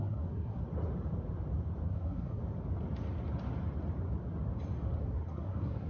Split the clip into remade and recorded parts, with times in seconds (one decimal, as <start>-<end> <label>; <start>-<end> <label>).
0.0-0.6 remade; 0.6-1.8 recorded; 1.8-2.4 remade; 2.4-5.0 recorded; 5.0-5.9 remade